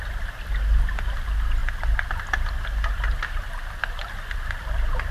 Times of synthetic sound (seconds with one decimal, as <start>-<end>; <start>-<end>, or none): none